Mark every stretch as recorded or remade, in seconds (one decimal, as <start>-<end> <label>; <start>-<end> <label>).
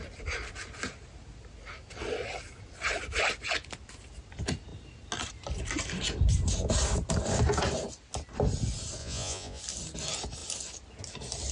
0.0-9.0 recorded; 9.0-9.6 remade; 9.6-11.5 recorded